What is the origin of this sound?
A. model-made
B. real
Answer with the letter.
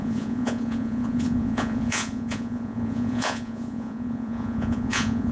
A